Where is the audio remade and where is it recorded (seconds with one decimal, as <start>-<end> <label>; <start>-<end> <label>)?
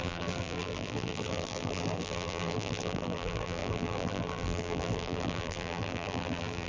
0.0-6.7 remade